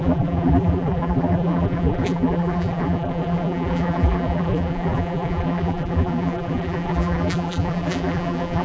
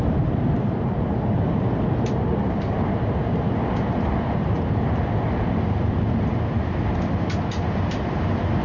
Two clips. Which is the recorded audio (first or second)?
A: second